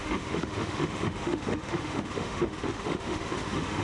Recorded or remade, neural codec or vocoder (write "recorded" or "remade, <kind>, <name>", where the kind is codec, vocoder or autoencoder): remade, autoencoder, DAC-VAE